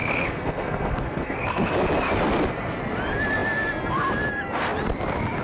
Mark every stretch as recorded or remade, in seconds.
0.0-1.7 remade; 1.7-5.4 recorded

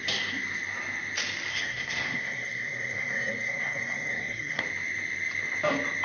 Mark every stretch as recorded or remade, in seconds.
0.0-1.5 recorded; 1.5-4.6 remade; 4.6-6.0 recorded

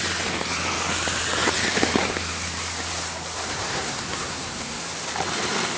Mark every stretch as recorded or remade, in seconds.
0.0-3.5 recorded; 3.5-4.8 remade; 4.8-5.8 recorded